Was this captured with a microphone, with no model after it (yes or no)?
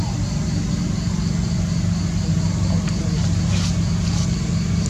yes